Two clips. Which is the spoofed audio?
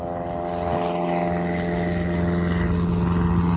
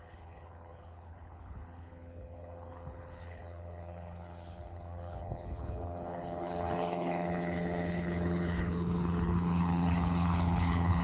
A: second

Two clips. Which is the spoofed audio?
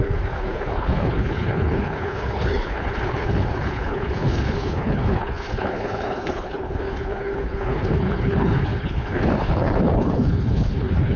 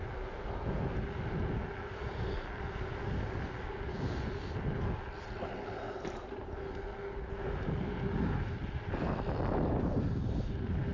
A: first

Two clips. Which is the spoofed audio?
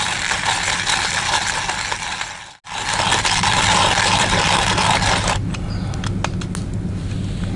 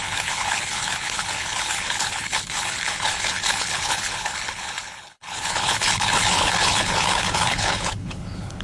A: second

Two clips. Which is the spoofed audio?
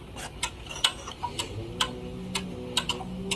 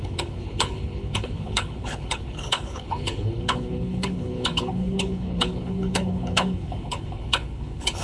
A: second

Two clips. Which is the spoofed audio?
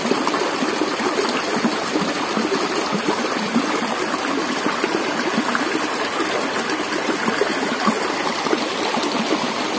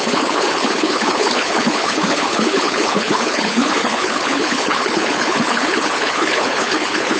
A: second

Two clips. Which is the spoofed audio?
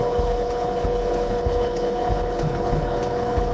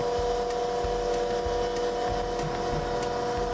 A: first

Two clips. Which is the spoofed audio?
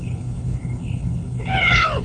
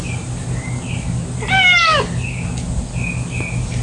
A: first